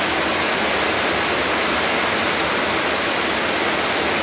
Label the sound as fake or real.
real